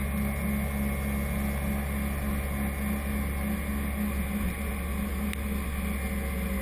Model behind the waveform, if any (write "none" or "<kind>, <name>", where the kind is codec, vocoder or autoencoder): none